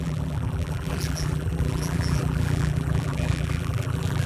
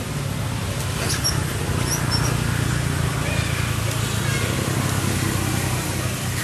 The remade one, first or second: first